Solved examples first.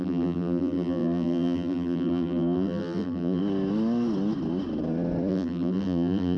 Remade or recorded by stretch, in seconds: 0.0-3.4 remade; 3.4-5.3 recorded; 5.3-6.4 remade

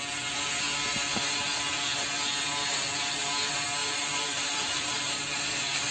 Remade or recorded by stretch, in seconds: 0.0-3.8 recorded; 3.8-5.4 remade; 5.4-5.9 recorded

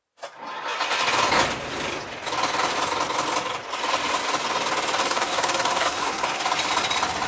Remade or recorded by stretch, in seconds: 0.0-5.0 recorded; 5.0-6.4 remade; 6.4-7.3 recorded

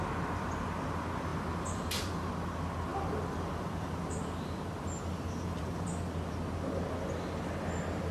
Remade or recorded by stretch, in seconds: 0.0-1.3 recorded; 1.3-2.3 remade; 2.3-2.9 recorded; 2.9-6.0 remade; 6.0-8.1 recorded